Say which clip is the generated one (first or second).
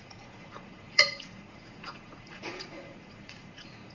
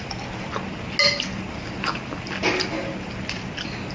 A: first